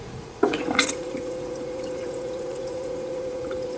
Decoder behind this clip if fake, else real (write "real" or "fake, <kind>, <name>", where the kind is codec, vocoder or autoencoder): fake, vocoder, Vocos